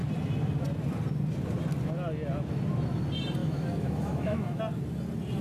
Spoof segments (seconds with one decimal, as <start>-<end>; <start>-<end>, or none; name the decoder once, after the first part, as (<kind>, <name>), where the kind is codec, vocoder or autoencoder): 3.4-4.6 (autoencoder, DAC-VAE)